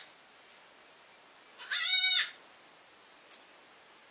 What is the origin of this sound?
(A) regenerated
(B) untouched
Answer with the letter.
B